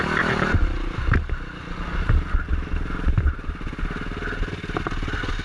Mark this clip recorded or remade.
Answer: recorded